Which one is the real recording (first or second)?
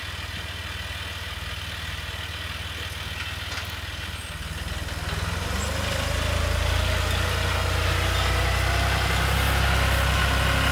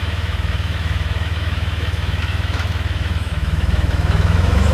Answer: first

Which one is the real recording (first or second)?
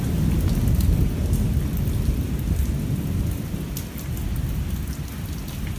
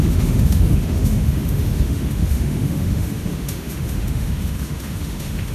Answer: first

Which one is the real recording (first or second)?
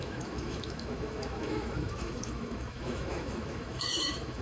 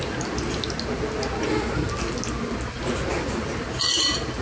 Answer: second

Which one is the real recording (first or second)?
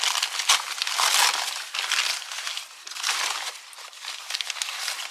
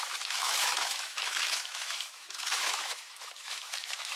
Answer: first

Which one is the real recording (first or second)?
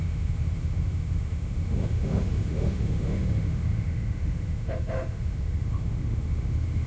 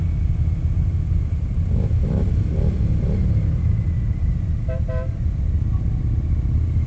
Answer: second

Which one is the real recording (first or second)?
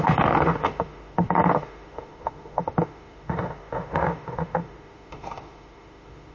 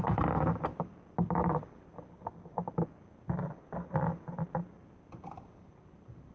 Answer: second